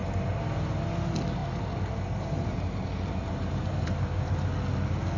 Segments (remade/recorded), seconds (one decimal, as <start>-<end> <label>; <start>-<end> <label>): 0.0-0.9 remade; 0.9-1.4 recorded; 1.4-4.5 remade; 4.5-5.2 recorded